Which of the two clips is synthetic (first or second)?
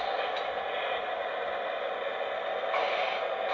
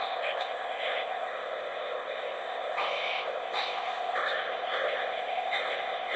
second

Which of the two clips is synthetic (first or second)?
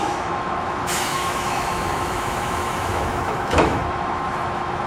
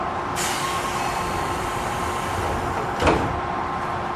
first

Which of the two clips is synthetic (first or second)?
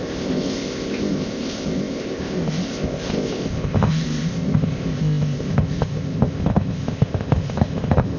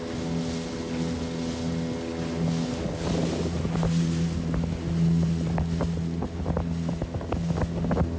first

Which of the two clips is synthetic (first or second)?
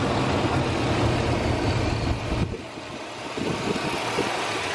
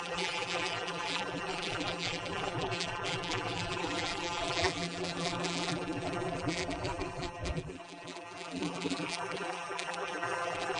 second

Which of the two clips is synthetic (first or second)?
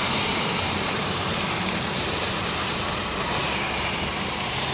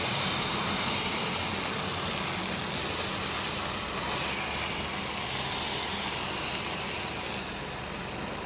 first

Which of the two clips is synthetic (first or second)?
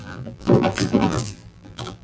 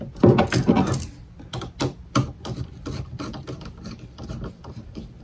first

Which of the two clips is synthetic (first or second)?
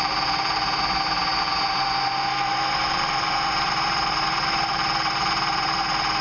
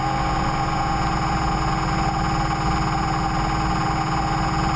first